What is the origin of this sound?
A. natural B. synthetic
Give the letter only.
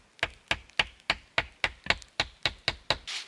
A